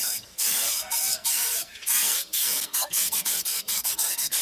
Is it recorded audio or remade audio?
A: remade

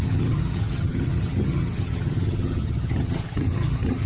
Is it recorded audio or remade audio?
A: remade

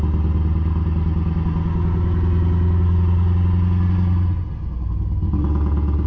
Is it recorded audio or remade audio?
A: recorded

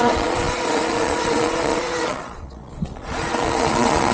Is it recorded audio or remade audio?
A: remade